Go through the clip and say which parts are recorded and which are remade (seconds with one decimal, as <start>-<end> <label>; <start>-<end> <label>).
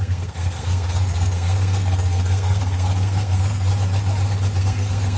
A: 0.0-3.7 remade; 3.7-4.6 recorded; 4.6-5.2 remade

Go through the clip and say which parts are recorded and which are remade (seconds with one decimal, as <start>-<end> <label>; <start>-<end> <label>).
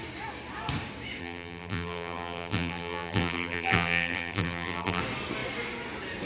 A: 0.0-1.2 recorded; 1.2-5.0 remade; 5.0-6.3 recorded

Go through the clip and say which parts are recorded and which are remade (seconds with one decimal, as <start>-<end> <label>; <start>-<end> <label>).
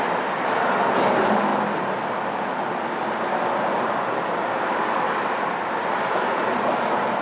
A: 0.0-7.2 recorded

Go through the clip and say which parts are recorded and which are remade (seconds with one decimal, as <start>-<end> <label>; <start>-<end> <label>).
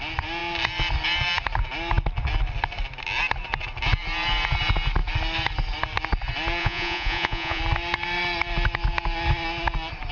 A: 0.0-6.6 recorded; 6.6-7.6 remade; 7.6-10.1 recorded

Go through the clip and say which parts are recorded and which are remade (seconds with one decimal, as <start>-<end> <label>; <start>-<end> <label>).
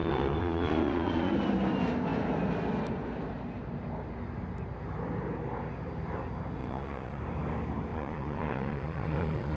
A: 0.0-1.3 remade; 1.3-6.6 recorded; 6.6-7.2 remade; 7.2-7.9 recorded; 7.9-9.6 remade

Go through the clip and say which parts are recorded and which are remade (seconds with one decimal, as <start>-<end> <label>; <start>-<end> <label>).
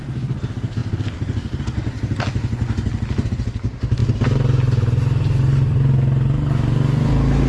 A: 0.0-7.5 recorded